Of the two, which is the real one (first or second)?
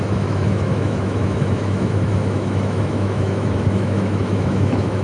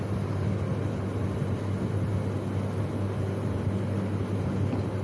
second